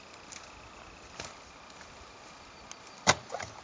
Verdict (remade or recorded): recorded